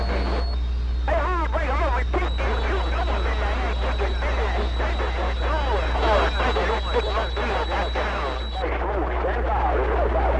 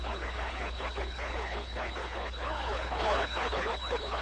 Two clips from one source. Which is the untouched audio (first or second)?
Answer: first